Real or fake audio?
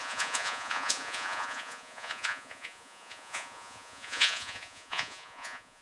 fake